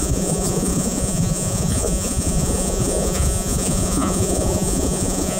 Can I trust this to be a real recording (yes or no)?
no